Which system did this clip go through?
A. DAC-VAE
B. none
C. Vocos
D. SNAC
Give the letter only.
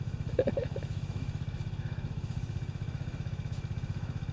A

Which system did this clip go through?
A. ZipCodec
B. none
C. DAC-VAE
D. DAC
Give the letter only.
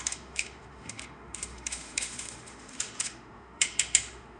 C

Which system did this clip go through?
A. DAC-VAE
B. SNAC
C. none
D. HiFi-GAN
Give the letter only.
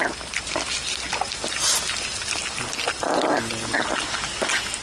C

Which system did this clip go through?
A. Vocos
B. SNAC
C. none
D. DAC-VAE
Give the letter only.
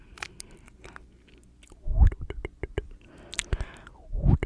C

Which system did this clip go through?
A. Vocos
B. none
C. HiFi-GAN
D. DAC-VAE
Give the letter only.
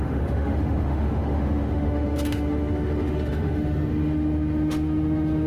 D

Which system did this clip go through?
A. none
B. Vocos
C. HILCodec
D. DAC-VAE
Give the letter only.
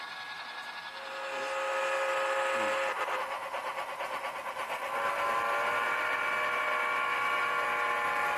A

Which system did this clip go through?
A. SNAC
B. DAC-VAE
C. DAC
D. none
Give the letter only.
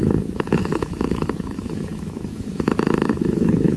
B